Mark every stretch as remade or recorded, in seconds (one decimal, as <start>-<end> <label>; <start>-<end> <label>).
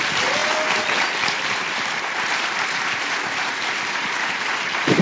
0.0-0.4 remade; 0.4-1.2 recorded; 1.2-5.0 remade